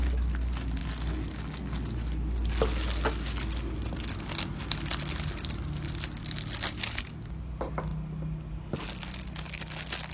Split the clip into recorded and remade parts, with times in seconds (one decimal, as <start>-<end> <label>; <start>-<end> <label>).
0.0-10.1 recorded